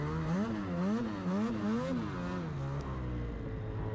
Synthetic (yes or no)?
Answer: no